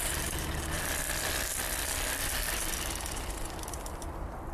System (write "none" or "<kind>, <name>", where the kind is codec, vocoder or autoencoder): none